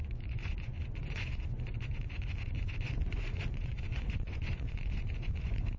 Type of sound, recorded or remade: remade